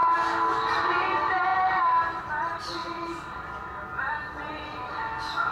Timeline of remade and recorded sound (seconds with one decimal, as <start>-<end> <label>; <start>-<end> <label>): 0.0-5.5 recorded

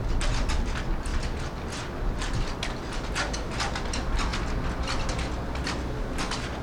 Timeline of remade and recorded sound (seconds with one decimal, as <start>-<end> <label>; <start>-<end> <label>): 0.0-6.6 recorded